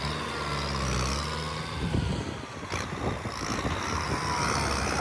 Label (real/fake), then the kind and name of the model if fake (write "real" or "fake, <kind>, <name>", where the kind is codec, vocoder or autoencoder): real